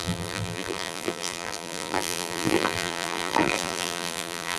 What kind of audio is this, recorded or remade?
remade